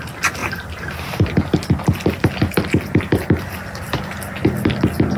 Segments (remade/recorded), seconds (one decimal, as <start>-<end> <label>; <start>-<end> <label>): 0.0-0.4 recorded; 0.4-1.3 remade; 1.3-5.2 recorded